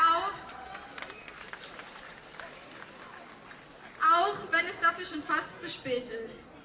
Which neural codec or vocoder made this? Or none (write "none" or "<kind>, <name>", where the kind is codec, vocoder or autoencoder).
none